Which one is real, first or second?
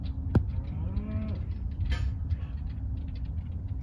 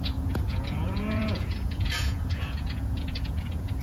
first